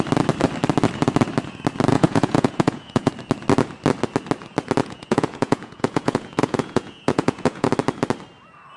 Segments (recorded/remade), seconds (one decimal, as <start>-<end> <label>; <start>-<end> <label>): 0.0-1.9 recorded; 1.9-3.1 remade; 3.1-4.8 recorded; 4.8-7.7 remade; 7.7-8.8 recorded